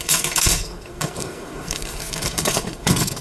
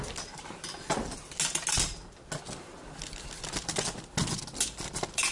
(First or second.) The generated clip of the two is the first